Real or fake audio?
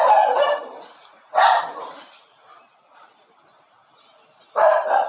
real